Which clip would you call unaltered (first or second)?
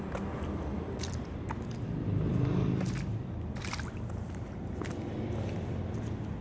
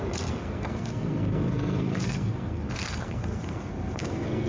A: first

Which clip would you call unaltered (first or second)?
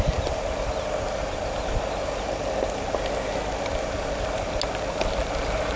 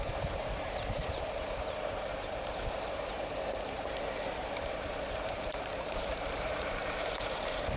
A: first